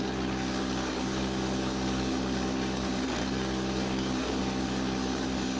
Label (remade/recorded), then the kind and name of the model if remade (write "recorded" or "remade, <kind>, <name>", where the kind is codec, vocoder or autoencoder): remade, codec, DAC